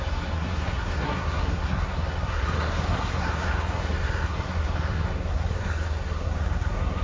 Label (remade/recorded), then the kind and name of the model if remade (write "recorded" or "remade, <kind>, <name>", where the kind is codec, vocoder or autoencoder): remade, codec, SNAC